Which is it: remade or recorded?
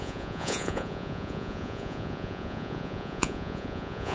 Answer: remade